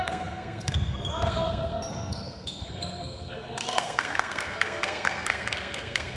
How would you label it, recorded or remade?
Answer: remade